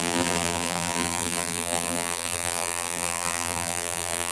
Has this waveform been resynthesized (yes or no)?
yes